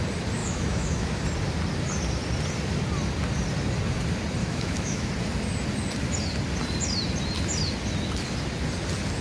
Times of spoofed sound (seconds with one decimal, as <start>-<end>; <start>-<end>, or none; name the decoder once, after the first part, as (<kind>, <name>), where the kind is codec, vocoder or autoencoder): 0.4-1.2 (autoencoder, DAC-VAE); 4.4-5.1